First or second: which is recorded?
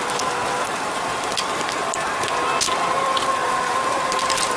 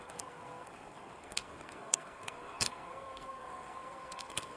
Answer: first